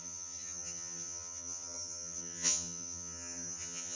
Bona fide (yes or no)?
no